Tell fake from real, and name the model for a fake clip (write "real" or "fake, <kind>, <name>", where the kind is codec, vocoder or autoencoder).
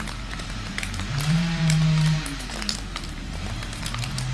fake, vocoder, BigVGAN v2